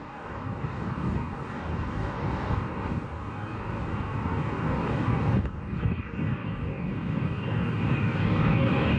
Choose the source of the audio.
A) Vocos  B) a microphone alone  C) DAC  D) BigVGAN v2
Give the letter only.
C